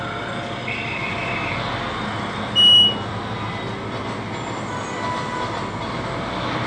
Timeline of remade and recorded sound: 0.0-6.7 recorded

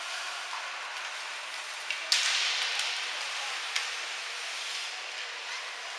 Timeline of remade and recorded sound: 0.0-4.2 recorded; 4.2-5.5 remade; 5.5-6.0 recorded

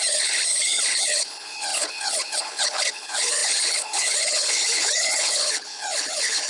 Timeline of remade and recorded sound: 0.0-6.5 remade

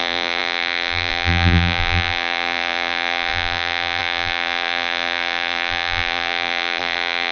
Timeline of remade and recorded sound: 0.0-7.3 remade

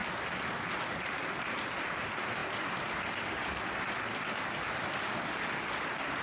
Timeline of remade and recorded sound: 0.0-6.2 recorded

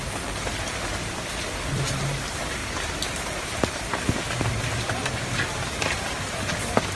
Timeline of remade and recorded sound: 0.0-6.9 recorded

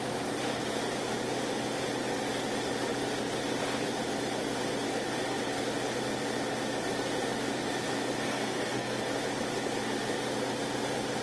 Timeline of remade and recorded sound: 0.0-8.3 recorded; 8.3-9.0 remade; 9.0-11.2 recorded

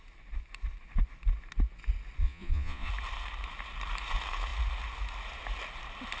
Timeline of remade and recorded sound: 0.0-2.2 recorded; 2.2-2.9 remade; 2.9-6.2 recorded